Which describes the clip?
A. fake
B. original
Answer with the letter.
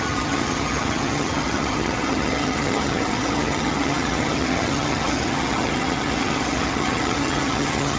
A